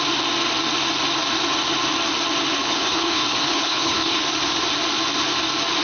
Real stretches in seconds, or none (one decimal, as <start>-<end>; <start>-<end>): 0.0-2.6; 4.2-5.8